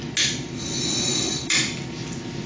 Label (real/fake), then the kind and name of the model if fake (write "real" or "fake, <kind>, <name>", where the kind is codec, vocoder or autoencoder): real